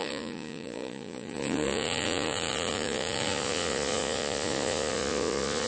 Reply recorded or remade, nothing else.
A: remade